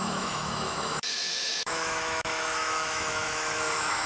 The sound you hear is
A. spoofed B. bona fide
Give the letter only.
A